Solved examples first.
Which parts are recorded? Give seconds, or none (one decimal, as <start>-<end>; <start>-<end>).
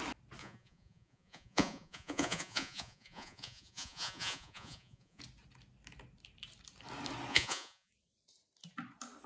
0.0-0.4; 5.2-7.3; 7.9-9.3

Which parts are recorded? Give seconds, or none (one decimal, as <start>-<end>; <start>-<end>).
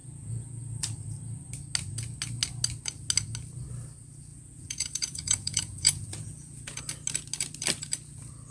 0.6-4.3; 6.8-8.5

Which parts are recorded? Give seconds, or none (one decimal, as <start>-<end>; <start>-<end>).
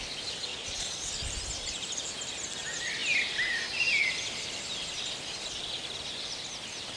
0.0-0.5; 1.1-7.0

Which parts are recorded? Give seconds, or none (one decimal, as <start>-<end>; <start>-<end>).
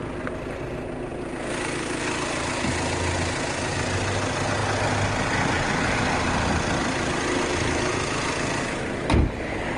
0.0-9.8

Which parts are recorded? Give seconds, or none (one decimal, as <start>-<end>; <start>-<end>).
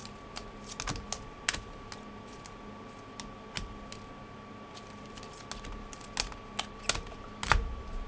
0.0-8.1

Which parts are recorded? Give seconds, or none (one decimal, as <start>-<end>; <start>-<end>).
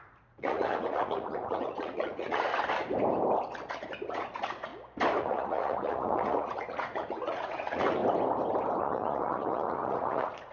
2.5-4.1; 4.7-5.2; 8.0-8.8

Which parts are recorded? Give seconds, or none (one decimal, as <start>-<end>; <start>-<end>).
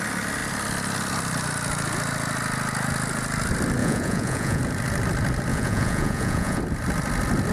0.0-3.8; 4.6-5.5; 6.6-7.5